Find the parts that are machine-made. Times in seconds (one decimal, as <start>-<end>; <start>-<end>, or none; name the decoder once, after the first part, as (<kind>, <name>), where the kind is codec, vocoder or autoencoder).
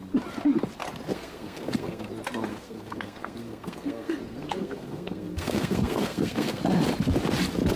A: 1.1-2.1 (codec, SNAC); 2.5-6.6